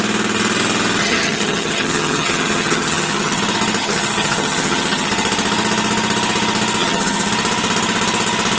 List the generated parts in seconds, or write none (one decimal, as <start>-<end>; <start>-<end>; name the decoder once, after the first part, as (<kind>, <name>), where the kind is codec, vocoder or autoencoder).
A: 1.0-3.4 (vocoder, HiFi-GAN); 3.8-5.1; 6.8-7.3